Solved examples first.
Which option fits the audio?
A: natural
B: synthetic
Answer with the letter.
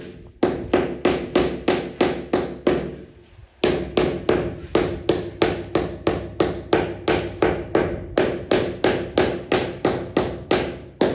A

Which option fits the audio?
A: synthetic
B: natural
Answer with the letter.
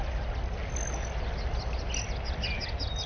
B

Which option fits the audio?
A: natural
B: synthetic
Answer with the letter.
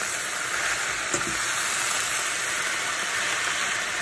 A